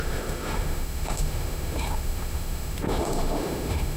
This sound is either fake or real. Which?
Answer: fake